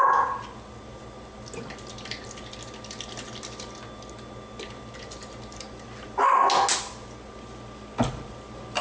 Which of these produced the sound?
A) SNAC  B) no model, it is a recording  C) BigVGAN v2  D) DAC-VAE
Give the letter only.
B